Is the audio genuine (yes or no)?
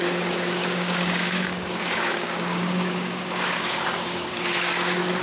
no